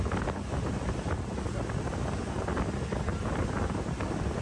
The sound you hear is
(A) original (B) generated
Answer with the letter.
A